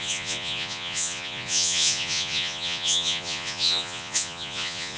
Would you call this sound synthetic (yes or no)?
yes